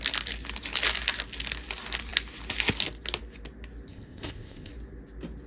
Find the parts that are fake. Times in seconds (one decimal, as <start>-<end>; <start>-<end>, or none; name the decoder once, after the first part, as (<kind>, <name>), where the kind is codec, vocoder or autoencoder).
3.9-4.7 (codec, ZipCodec)